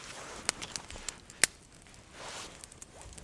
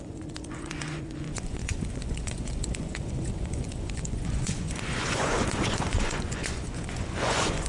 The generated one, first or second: second